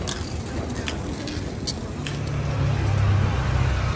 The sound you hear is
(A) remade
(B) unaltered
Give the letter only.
B